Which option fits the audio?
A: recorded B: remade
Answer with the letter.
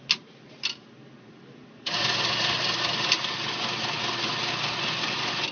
A